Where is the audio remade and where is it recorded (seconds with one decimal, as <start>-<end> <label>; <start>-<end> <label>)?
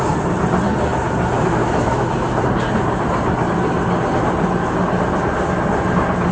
0.0-1.6 recorded; 1.6-2.1 remade; 2.1-6.3 recorded